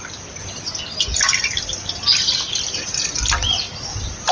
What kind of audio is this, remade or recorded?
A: recorded